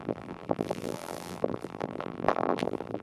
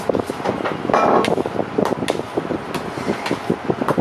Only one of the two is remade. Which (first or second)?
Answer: first